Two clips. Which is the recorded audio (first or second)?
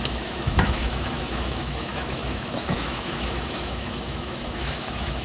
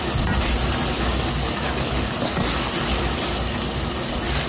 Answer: second